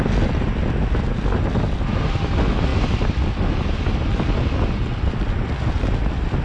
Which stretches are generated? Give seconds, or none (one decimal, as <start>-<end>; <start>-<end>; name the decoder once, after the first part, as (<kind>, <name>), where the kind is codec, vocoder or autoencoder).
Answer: none